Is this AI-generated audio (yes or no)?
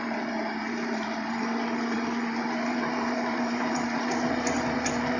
yes